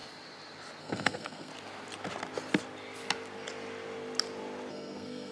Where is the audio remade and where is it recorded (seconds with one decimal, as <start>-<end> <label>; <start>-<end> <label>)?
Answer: 0.0-0.8 recorded; 0.8-1.5 remade; 1.5-4.7 recorded; 4.7-5.3 remade